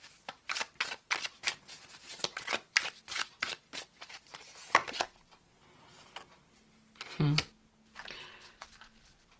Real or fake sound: real